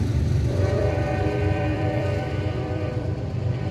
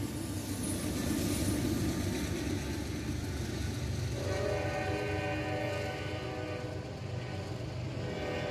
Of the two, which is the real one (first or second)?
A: second